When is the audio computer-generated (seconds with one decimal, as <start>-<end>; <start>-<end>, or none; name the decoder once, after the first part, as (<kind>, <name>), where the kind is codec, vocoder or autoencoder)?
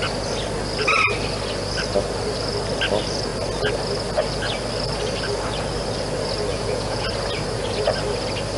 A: 6.5-7.1 (vocoder, Vocos)